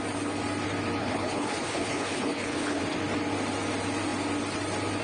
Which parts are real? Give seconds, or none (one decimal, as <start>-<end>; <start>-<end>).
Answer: 0.0-1.0; 2.8-5.0